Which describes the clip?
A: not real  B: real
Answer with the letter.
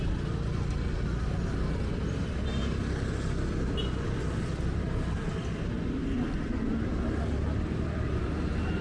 B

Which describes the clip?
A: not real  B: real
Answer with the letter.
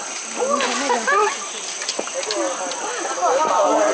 B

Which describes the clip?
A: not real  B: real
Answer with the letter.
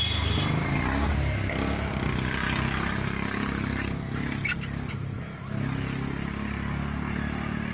B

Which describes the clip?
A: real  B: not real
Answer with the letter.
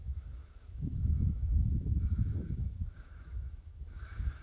B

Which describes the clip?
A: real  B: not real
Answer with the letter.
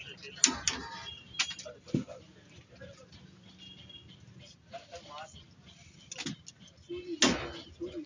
A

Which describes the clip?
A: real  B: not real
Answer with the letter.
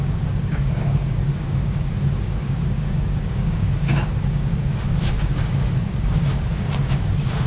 B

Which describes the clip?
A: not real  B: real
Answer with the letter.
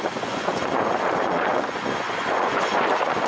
A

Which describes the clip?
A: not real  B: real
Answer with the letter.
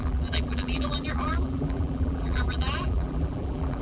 A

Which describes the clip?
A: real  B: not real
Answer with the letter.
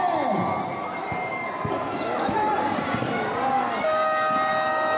A